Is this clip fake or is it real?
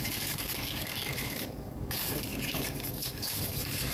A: fake